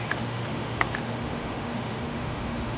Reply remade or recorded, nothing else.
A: remade